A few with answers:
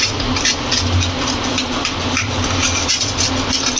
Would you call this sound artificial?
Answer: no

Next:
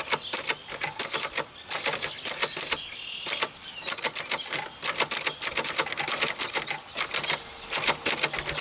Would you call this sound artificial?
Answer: no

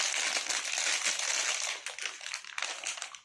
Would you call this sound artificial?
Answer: no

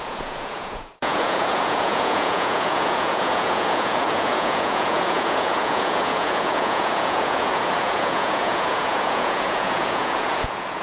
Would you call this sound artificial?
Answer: yes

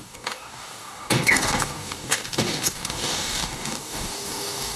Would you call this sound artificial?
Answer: yes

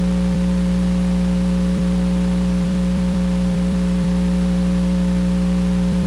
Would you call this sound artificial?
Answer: yes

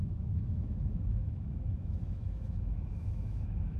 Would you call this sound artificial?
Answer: yes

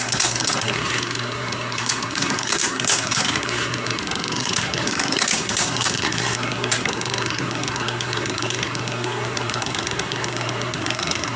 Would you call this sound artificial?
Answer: yes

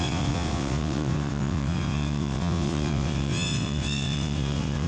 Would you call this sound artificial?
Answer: yes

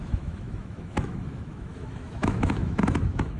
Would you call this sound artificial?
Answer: yes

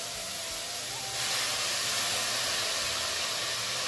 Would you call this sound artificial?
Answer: no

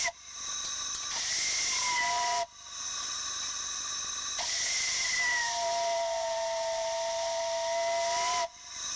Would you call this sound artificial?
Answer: no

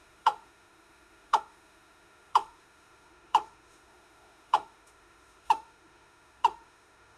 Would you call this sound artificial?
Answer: yes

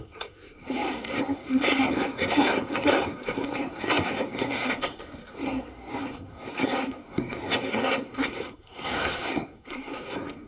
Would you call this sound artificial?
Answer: yes